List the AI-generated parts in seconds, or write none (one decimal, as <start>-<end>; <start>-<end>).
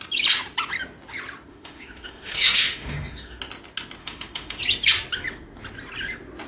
1.5-3.4; 4.0-4.6